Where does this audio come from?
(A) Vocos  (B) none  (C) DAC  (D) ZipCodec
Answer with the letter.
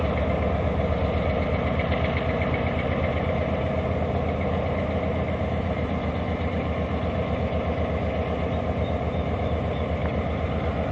B